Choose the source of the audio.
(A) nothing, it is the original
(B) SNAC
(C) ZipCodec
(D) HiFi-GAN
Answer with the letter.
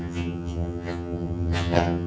D